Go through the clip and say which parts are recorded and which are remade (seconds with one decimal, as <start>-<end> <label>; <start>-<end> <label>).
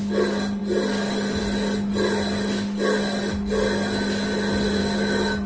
0.0-4.8 recorded; 4.8-5.5 remade